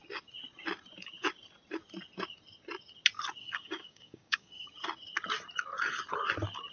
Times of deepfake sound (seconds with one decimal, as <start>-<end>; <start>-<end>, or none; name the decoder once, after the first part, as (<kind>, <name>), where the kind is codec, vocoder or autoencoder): 3.4-4.7 (codec, DAC)